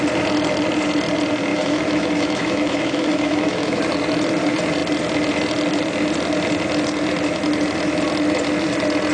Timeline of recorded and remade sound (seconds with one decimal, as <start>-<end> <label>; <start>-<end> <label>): 0.0-1.5 recorded; 1.5-3.8 remade; 3.8-9.1 recorded